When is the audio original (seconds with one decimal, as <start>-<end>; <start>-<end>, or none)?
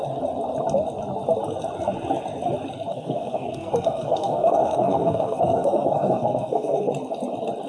0.0-2.9; 6.9-7.7